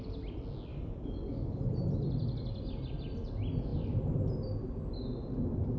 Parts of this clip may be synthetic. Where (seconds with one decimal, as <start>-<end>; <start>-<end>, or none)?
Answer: 0.7-1.6